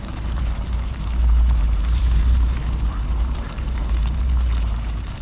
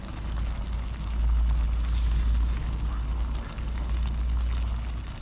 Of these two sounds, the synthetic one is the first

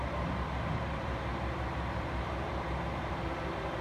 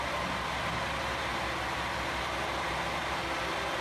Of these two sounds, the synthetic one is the first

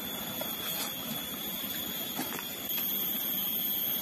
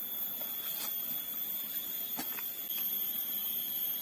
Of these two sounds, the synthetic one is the first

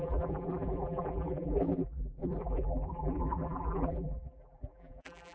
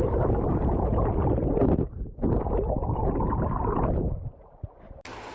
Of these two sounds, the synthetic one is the first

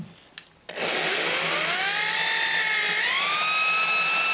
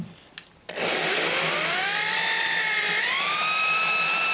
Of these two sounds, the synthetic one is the second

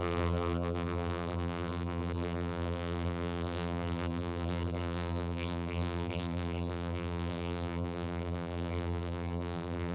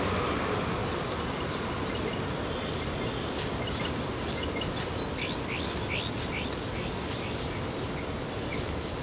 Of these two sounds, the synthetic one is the first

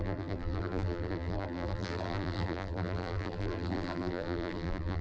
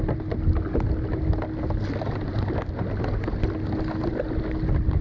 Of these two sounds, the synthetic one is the first